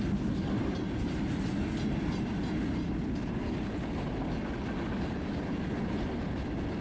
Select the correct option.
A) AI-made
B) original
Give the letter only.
B